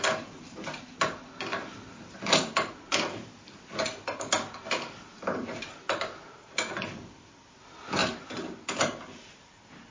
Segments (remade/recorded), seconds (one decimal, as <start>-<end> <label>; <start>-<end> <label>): 0.0-1.5 recorded; 1.5-3.6 remade; 3.6-9.9 recorded